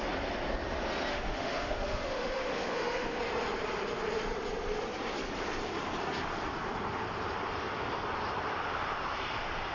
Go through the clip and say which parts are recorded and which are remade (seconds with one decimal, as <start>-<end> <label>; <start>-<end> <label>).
0.0-1.1 recorded; 1.1-3.2 remade; 3.2-9.7 recorded